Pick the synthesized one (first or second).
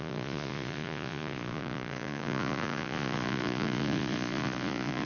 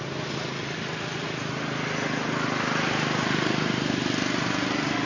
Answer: first